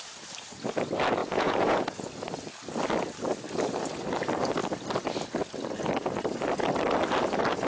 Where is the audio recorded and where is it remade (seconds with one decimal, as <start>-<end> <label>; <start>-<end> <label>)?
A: 0.0-1.2 recorded; 1.2-2.1 remade; 2.1-7.7 recorded